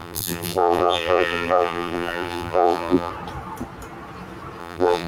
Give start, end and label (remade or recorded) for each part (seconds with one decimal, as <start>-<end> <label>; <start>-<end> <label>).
0.0-3.1 remade; 3.1-4.6 recorded; 4.6-5.1 remade